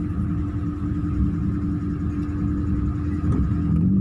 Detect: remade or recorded recorded